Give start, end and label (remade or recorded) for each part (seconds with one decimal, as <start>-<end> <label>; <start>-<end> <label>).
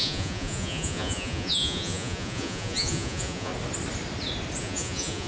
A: 0.0-3.5 remade; 3.5-4.6 recorded; 4.6-5.3 remade